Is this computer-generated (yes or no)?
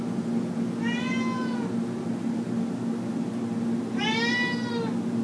no